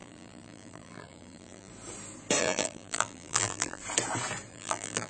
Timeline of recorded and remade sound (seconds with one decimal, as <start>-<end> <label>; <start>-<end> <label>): 0.0-1.7 remade; 1.7-2.4 recorded; 2.4-3.8 remade; 3.8-4.5 recorded; 4.5-5.1 remade